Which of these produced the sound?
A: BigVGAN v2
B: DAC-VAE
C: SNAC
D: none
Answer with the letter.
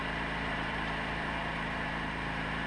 A